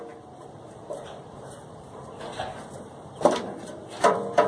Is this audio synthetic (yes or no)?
yes